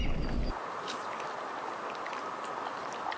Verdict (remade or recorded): recorded